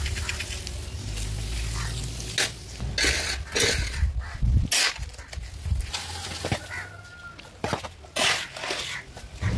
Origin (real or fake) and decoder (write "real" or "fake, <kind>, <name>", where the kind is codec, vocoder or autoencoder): real